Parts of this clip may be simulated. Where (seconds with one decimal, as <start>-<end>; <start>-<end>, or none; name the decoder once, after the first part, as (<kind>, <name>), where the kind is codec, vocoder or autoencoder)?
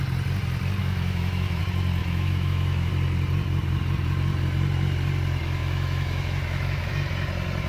0.8-1.6 (autoencoder, DAC-VAE); 2.0-2.9; 5.6-6.9